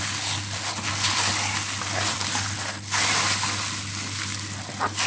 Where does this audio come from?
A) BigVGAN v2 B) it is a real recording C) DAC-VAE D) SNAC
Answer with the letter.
B